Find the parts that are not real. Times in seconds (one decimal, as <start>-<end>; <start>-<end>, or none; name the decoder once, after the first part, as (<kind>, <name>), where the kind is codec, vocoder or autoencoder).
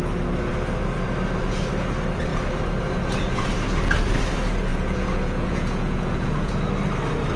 4.7-6.5 (vocoder, Vocos)